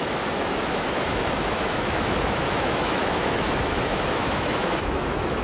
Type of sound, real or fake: fake